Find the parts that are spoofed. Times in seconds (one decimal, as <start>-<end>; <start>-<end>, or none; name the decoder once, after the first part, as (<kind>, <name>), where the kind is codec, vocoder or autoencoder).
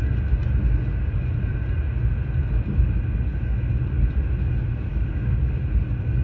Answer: 4.9-5.5 (autoencoder, DAC-VAE)